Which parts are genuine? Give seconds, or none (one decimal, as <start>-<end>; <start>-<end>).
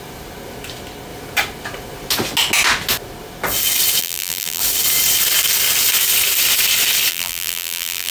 0.0-4.0; 4.6-7.1